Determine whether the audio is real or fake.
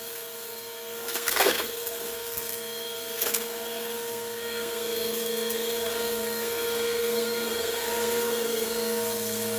fake